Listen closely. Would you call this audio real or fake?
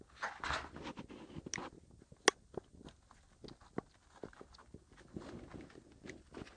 real